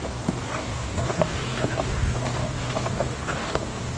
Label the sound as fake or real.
fake